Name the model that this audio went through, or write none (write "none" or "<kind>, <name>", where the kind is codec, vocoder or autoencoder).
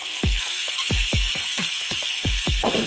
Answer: codec, SNAC